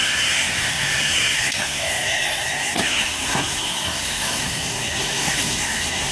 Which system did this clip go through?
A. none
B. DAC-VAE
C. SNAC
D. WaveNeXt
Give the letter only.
C